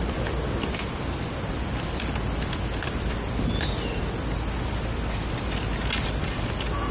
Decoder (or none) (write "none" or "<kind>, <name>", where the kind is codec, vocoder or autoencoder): none